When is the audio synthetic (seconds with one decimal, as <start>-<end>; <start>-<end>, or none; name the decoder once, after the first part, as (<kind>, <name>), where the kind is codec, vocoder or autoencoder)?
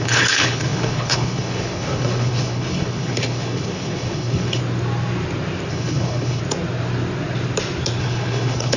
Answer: 0.0-4.6 (codec, HILCodec); 5.7-6.4; 8.0-8.8